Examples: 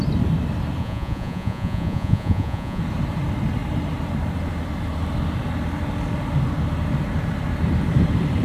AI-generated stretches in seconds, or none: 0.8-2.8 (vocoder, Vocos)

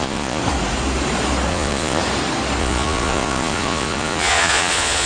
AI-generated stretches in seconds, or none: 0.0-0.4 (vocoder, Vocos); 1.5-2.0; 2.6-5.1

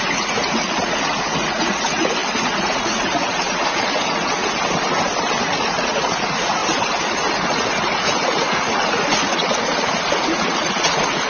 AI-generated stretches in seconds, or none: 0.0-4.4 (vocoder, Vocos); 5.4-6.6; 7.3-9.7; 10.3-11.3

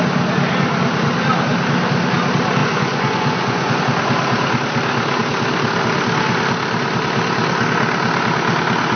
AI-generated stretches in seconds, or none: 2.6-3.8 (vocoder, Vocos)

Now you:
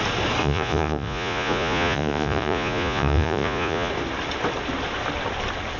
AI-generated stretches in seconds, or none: 0.4-3.9 (vocoder, Vocos)

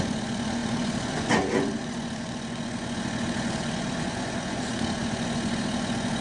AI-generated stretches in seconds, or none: 0.0-6.2 (vocoder, Vocos)

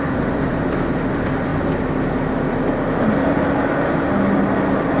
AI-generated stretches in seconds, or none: none

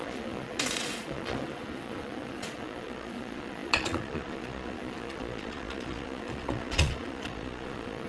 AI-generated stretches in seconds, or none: 0.0-8.1 (vocoder, Vocos)